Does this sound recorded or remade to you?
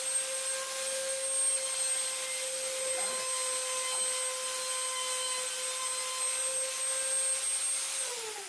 recorded